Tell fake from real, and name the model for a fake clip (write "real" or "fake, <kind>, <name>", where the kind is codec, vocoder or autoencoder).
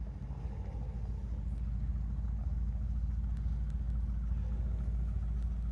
real